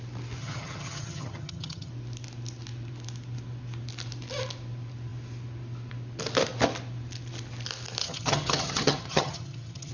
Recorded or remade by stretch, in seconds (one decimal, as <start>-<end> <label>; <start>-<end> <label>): 0.0-0.4 recorded; 0.4-1.9 remade; 1.9-8.0 recorded; 8.0-9.9 remade